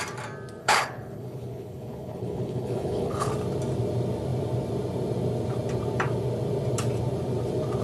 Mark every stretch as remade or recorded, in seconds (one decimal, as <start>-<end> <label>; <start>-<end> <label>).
0.0-0.6 recorded; 0.6-3.3 remade; 3.3-7.8 recorded